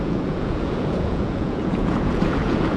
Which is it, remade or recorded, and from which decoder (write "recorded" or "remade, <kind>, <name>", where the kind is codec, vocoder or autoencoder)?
remade, vocoder, Vocos